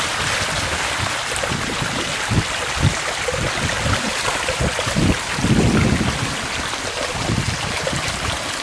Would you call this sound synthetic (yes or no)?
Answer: no